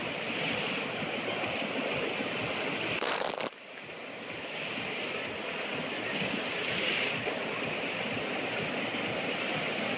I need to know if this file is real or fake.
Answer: real